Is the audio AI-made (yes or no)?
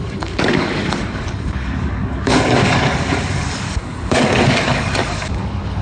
yes